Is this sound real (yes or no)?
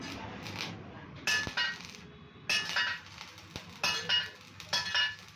yes